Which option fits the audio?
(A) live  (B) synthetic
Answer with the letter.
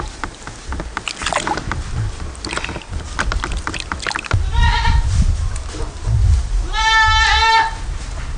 A